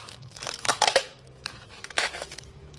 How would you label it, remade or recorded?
remade